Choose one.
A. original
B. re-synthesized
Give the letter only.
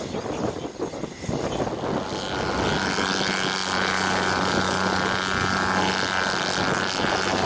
A